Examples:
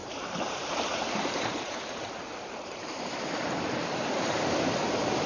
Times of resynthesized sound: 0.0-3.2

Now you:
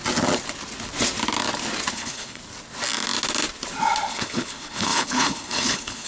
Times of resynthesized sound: 1.9-2.4; 4.1-6.1